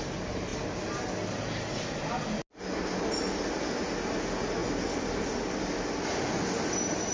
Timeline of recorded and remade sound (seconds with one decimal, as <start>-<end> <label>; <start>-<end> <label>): 0.0-7.1 recorded